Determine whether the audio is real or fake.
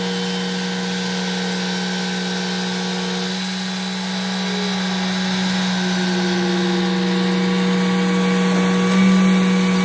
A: real